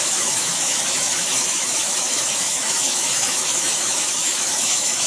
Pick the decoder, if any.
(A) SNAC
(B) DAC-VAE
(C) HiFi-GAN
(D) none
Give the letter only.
B